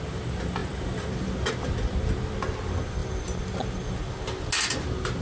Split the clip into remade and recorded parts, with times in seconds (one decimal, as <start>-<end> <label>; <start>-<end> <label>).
0.0-5.2 recorded